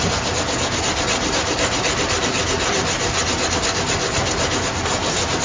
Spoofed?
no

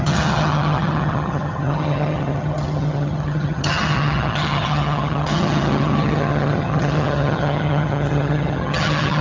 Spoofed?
yes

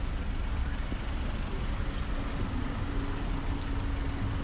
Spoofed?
no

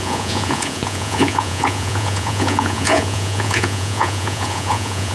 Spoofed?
yes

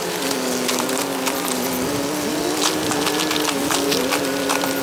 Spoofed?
no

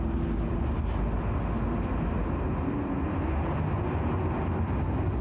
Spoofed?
no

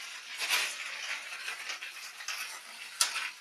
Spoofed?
no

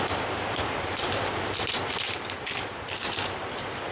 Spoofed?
no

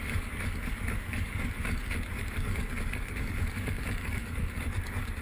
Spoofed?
yes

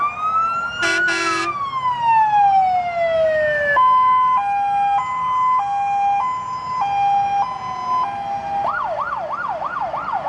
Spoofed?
no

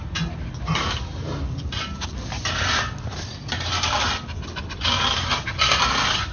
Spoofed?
no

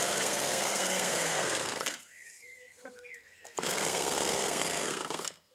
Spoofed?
yes